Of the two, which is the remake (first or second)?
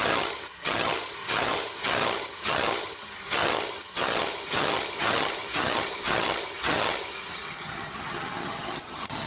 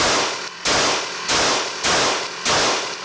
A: first